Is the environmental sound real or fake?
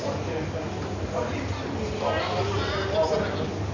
real